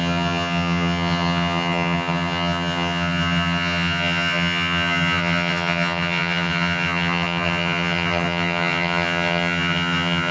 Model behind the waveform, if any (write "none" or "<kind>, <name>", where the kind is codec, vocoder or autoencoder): vocoder, HiFi-GAN